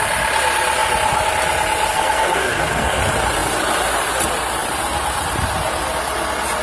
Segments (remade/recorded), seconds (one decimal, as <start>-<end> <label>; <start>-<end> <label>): 0.0-1.9 recorded; 1.9-3.0 remade; 3.0-6.6 recorded